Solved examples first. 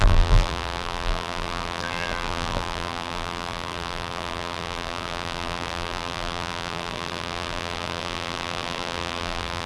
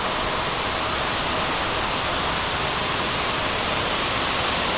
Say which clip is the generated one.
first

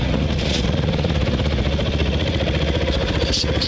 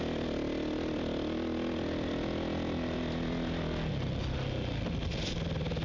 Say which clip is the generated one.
first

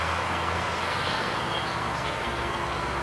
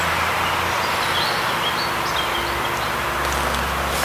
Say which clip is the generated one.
first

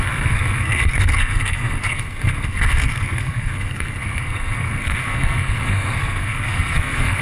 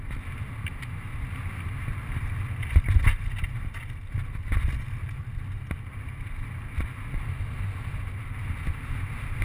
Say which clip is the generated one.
first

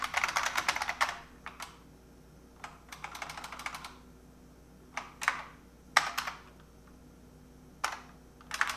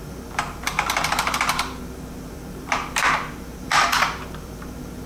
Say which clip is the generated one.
second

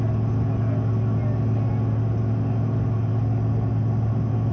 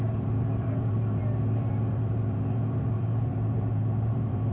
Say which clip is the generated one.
second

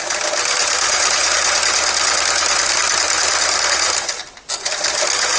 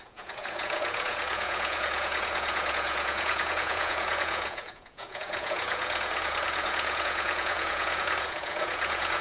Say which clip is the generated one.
second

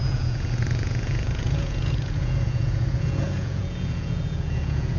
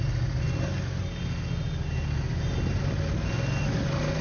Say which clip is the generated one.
first